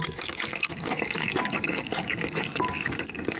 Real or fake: fake